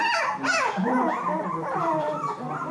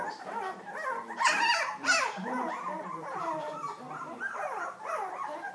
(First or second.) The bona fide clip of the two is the first